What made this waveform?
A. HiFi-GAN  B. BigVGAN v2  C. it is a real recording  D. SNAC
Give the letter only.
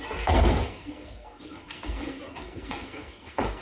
D